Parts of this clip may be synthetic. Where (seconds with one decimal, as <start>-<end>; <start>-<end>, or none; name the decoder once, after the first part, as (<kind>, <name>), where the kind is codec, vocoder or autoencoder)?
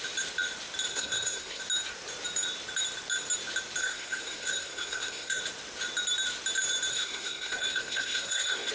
0.9-1.6 (codec, SNAC); 3.8-5.4; 6.9-8.7